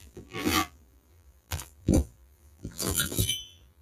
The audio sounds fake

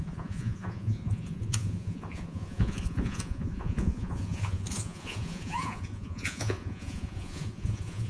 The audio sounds fake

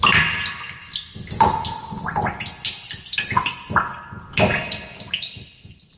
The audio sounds real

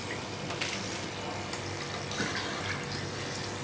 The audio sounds real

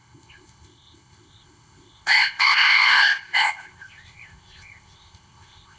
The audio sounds fake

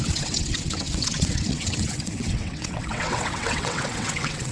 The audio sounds fake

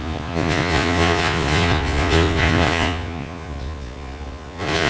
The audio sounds fake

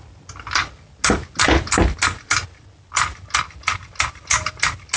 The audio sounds real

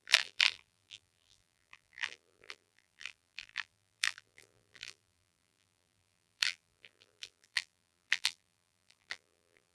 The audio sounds fake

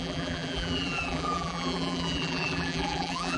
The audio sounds fake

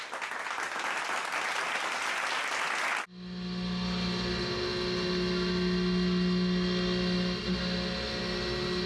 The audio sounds real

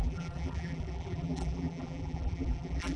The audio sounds fake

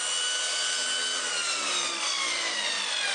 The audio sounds real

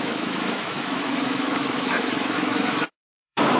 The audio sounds fake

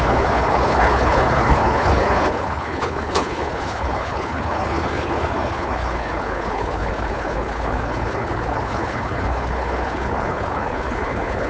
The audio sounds fake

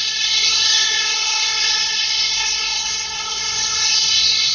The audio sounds fake